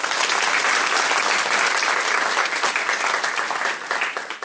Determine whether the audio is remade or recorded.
recorded